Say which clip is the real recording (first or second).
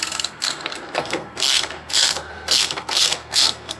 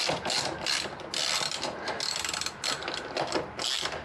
second